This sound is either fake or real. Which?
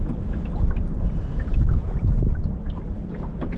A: real